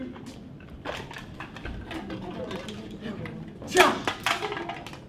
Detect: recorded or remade recorded